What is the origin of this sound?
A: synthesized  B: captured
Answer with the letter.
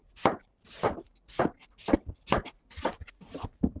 B